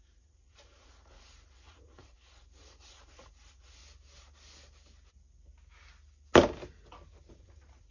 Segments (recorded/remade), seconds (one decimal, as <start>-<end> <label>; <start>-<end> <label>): 0.0-3.8 remade; 3.8-7.3 recorded; 7.3-7.9 remade